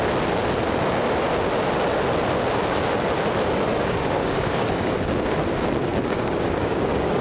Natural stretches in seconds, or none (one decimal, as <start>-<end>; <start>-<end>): 0.0-3.7; 5.3-5.9